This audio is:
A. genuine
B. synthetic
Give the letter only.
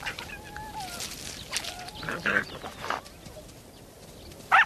A